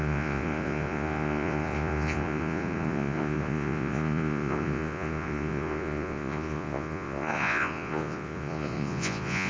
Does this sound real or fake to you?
fake